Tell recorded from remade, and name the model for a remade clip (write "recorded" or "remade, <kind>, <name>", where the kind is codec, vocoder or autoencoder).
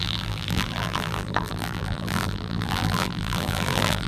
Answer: remade, vocoder, BigVGAN v2